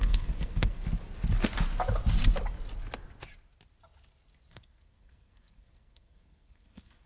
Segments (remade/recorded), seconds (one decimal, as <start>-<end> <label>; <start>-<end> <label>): 0.0-0.8 remade; 0.8-4.5 recorded; 4.5-7.1 remade